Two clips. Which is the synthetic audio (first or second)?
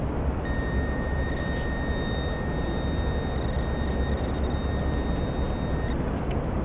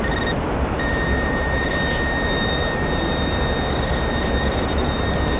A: second